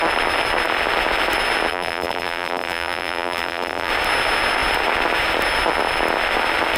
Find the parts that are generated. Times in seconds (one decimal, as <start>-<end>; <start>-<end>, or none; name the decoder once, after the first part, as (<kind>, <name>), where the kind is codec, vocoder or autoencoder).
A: 1.7-3.9 (vocoder, BigVGAN v2)